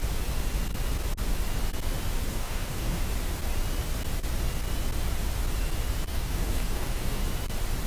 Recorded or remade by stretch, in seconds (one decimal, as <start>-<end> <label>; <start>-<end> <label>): 0.0-2.3 recorded; 2.3-3.0 remade; 3.0-6.1 recorded; 6.1-7.2 remade; 7.2-7.9 recorded